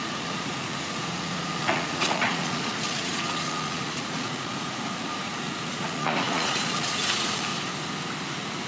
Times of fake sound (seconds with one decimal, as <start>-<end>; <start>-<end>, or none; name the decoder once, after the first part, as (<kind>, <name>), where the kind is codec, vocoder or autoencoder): 0.0-7.5 (vocoder, Vocos); 8.2-8.7